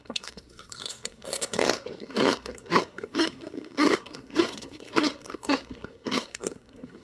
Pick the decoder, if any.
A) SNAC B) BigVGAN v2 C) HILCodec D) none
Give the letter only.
A